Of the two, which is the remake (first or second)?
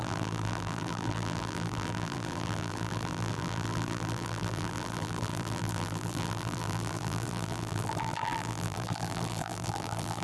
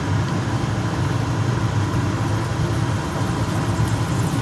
first